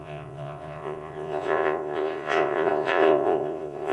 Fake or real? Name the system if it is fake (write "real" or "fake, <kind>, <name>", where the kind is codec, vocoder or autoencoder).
fake, vocoder, Vocos